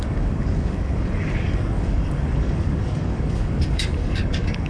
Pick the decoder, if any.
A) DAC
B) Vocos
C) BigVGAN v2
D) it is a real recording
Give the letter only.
A